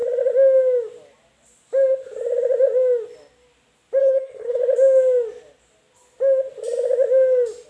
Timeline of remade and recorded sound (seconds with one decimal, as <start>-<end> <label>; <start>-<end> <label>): 0.0-4.0 recorded; 4.0-4.6 remade; 4.6-7.7 recorded